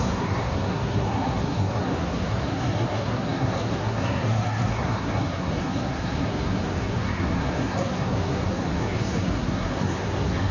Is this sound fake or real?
fake